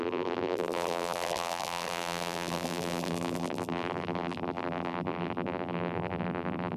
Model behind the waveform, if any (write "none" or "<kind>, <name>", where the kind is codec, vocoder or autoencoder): vocoder, BigVGAN v2